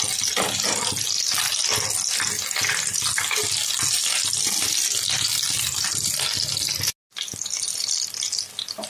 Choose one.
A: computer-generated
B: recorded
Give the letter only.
B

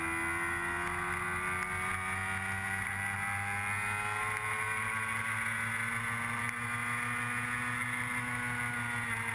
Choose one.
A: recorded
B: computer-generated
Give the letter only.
A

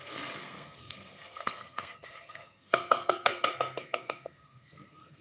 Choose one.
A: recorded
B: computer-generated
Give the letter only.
B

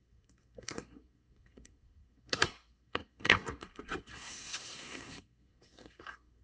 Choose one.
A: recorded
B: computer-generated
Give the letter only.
B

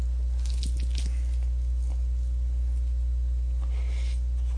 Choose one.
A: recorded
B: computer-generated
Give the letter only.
A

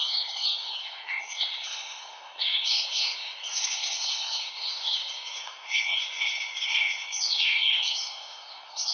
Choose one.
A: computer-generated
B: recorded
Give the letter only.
A